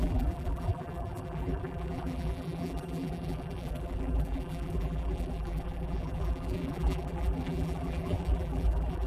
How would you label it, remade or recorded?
remade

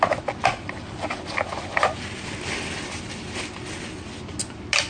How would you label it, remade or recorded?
recorded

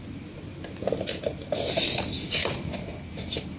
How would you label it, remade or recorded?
recorded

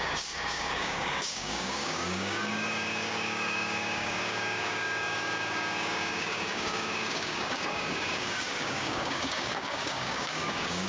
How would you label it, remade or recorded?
remade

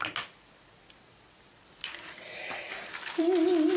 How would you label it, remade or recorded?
remade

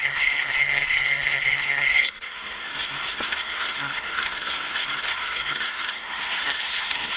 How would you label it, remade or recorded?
remade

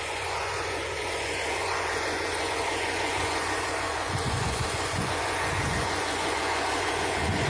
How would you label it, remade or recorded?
remade